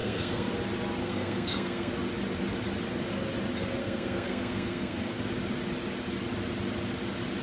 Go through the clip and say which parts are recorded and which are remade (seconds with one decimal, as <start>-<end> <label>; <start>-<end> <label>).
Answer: 0.0-0.5 remade; 0.5-1.0 recorded; 1.0-1.9 remade; 1.9-3.8 recorded; 3.8-5.2 remade; 5.2-7.4 recorded